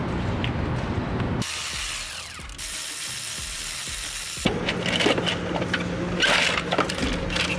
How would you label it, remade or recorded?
recorded